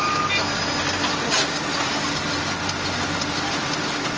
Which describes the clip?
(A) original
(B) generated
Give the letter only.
A